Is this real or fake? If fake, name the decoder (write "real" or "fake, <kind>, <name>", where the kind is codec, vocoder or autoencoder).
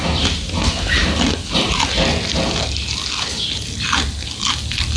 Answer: real